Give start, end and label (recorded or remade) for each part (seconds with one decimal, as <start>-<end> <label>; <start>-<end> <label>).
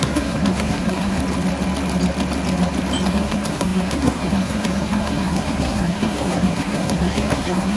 0.0-1.2 remade; 1.2-3.1 recorded; 3.1-7.8 remade